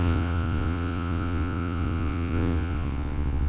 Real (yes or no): no